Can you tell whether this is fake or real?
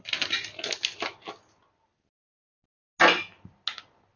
real